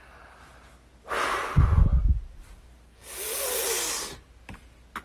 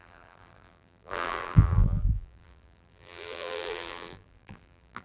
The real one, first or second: first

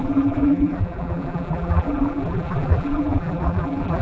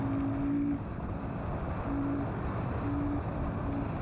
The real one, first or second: second